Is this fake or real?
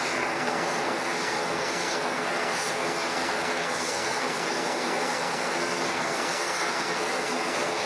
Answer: fake